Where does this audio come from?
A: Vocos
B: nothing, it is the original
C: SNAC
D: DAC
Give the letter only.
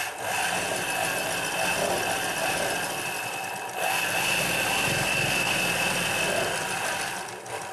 B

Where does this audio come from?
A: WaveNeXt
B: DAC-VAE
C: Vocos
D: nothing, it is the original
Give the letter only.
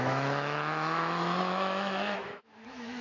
B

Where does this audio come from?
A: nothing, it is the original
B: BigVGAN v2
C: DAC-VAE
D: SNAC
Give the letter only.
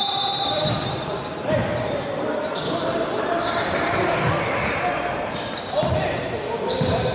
B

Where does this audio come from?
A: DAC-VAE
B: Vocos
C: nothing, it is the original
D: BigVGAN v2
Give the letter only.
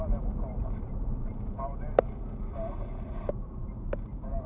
D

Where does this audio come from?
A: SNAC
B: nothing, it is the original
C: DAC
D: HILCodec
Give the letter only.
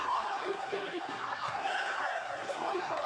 A